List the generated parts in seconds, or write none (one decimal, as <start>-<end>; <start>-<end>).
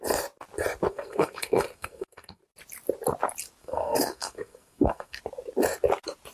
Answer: 0.9-2.4; 3.6-5.2